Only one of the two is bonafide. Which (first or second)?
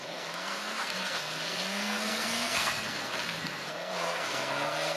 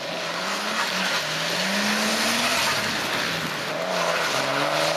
second